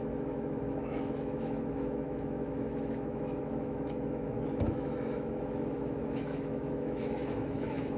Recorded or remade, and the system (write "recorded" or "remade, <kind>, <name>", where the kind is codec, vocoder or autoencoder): remade, autoencoder, DAC-VAE